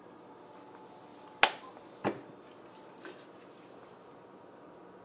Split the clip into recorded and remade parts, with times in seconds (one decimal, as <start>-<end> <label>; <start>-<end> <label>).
0.0-5.0 recorded